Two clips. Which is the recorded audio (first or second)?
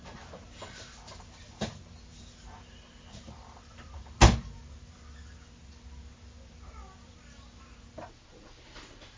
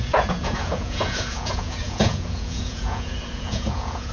first